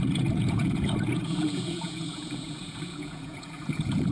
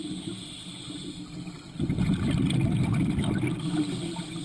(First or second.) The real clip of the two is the second